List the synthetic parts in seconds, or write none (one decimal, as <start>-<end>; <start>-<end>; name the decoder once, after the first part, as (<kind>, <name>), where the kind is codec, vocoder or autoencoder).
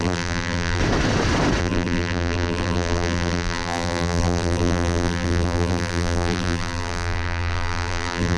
0.0-0.8 (vocoder, BigVGAN v2); 1.6-8.4